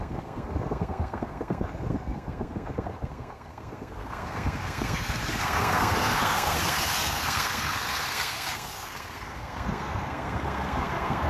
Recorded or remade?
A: remade